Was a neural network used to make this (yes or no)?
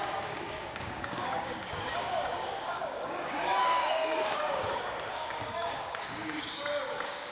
yes